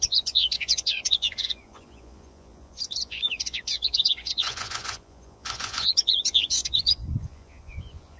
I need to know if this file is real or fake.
fake